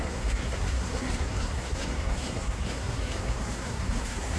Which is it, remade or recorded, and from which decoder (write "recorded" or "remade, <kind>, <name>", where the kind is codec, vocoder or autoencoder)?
remade, codec, SNAC